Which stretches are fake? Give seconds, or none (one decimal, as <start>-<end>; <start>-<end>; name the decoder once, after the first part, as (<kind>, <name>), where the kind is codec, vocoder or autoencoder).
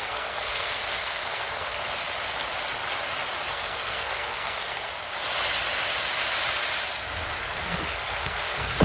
0.0-1.8 (codec, SNAC); 3.5-4.9; 7.4-8.8